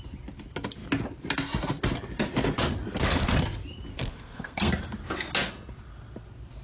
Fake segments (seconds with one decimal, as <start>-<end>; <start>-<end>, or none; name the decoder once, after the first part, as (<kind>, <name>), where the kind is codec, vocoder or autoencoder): 3.9-4.7 (codec, SNAC)